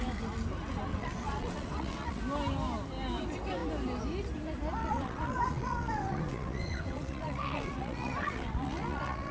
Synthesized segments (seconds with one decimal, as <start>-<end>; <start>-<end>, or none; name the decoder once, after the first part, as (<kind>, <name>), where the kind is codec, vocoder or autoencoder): 0.9-2.2 (vocoder, WaveNeXt); 4.8-9.3